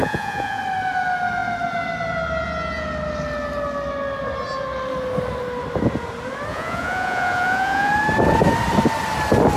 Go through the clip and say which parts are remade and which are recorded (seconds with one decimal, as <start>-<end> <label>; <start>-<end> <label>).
0.0-0.6 remade; 0.6-6.5 recorded; 6.5-7.9 remade; 7.9-9.6 recorded